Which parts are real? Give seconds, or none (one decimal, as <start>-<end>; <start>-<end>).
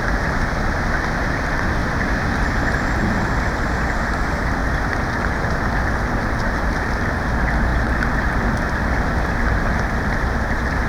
0.0-10.9